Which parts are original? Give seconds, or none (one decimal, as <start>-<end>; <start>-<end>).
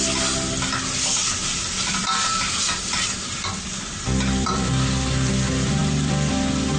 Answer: 0.0-1.2; 5.3-5.8